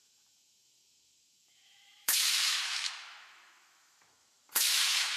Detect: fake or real fake